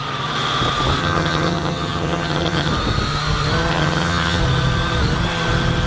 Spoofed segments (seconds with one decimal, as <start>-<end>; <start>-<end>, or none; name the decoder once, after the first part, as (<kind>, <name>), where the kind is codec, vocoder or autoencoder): 1.0-2.7 (vocoder, HiFi-GAN); 3.7-4.4